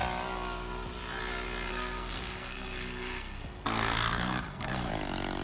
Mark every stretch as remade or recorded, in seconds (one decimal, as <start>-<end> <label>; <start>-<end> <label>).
0.0-1.7 recorded; 1.7-4.9 remade; 4.9-5.4 recorded